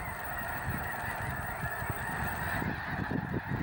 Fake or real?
fake